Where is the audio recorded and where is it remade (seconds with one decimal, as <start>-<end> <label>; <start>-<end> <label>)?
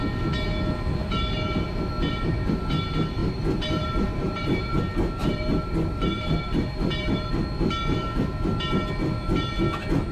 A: 0.0-3.2 recorded; 3.2-4.8 remade; 4.8-5.2 recorded; 5.2-7.3 remade; 7.3-10.1 recorded